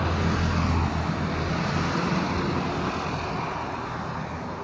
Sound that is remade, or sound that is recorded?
recorded